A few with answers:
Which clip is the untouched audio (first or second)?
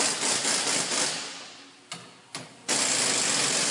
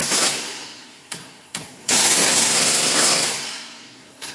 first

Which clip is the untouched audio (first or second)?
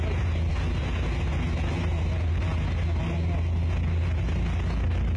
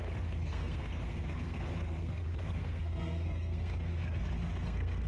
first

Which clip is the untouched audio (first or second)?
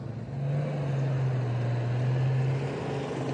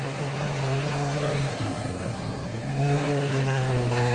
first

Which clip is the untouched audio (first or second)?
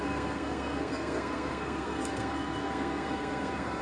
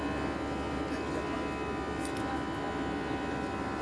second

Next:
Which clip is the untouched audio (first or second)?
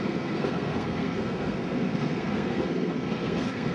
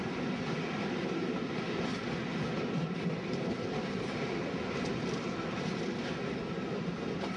second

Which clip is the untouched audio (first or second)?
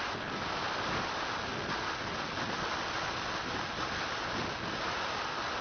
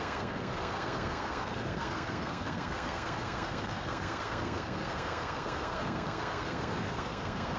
first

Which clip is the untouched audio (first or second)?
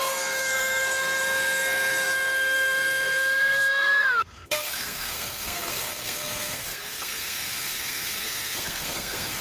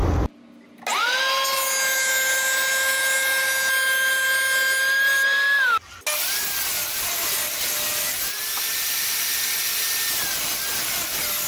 second